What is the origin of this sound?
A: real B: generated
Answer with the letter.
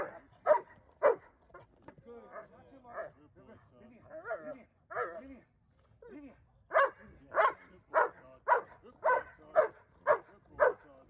A